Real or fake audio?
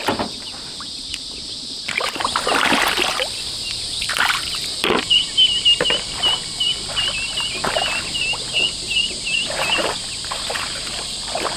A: real